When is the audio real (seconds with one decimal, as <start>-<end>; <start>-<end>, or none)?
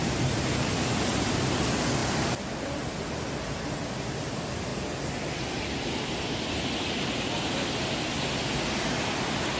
0.0-9.6